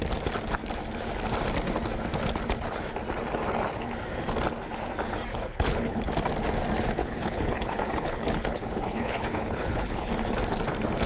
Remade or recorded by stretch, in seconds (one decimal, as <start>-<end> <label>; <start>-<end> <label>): 0.0-5.3 recorded; 5.3-6.1 remade; 6.1-7.0 recorded; 7.0-10.1 remade; 10.1-11.1 recorded